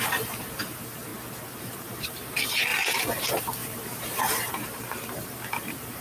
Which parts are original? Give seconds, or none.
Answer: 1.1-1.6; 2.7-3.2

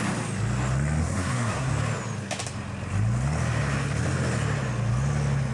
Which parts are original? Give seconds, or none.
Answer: 0.0-1.0; 1.7-5.5

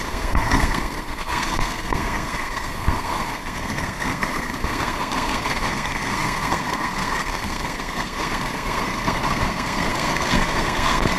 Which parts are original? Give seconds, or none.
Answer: none

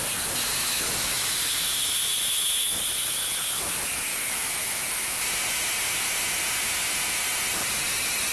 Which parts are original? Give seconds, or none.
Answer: 0.0-0.5; 3.6-4.1; 5.3-8.3

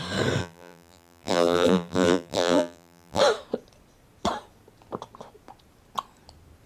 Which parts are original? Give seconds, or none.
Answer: 0.0-0.4; 3.2-6.7